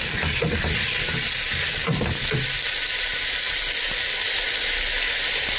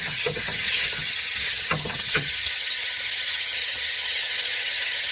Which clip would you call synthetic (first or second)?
second